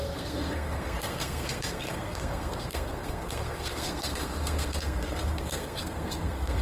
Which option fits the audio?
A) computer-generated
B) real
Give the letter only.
A